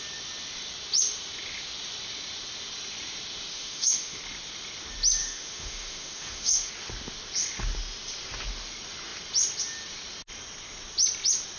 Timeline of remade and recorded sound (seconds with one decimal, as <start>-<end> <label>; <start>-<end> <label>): 0.0-3.5 recorded; 3.5-4.2 remade; 4.2-5.2 recorded; 5.2-6.7 remade; 6.7-11.6 recorded